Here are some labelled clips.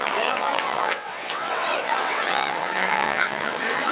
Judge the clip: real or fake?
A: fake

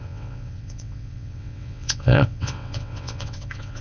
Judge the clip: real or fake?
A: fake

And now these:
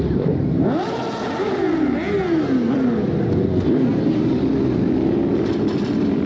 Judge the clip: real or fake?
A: real